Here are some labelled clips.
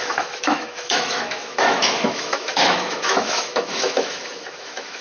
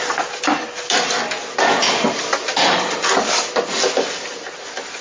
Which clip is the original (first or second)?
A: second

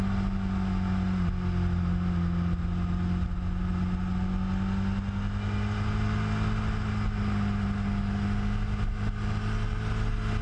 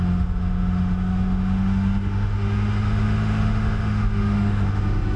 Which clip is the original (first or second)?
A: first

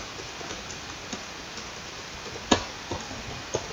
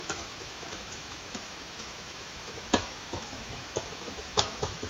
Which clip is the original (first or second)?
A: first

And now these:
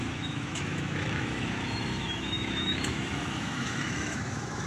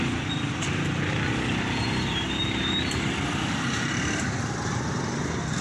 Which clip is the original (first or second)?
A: second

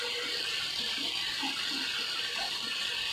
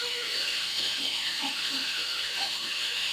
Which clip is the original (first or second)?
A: first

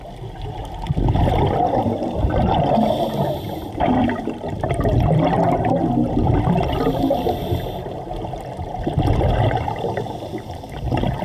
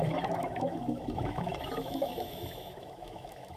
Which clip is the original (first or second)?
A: first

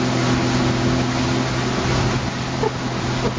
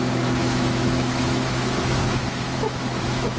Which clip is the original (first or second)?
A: first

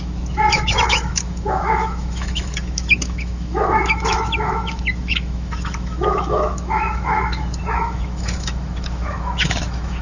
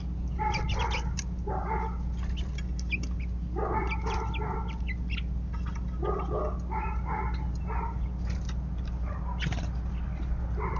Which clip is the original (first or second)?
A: second